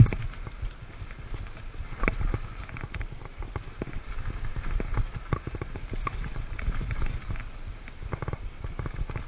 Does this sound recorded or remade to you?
recorded